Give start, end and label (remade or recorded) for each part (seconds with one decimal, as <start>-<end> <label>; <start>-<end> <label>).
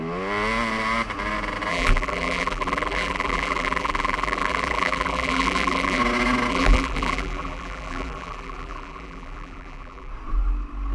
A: 0.0-1.7 recorded; 1.7-6.0 remade; 6.0-6.5 recorded; 6.5-10.1 remade; 10.1-10.9 recorded